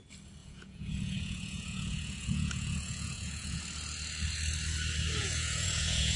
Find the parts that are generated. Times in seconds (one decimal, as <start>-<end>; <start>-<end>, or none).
0.4-3.6; 5.2-6.2